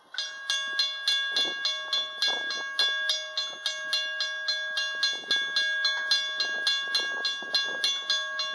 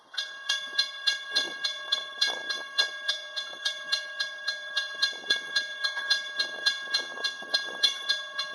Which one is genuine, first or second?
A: first